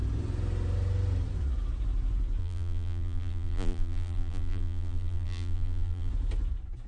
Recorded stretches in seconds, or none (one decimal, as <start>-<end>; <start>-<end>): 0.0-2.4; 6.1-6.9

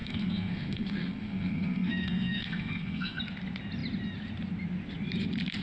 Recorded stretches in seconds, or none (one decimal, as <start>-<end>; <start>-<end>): 3.2-5.6

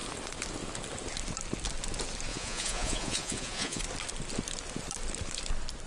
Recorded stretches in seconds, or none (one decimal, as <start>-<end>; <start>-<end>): 0.0-2.3; 3.8-5.9